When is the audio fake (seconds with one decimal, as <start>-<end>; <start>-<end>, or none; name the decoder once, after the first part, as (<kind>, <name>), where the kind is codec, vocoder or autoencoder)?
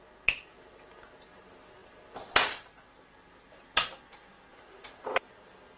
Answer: 4.5-5.2 (vocoder, BigVGAN v2)